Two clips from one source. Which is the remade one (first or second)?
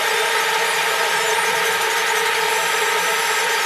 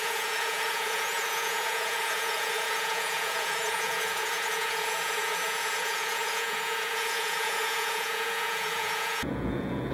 second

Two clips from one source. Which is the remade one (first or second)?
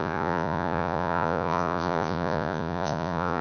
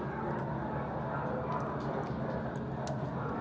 first